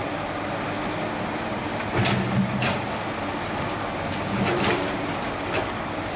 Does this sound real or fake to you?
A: real